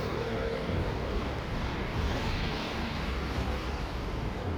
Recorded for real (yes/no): no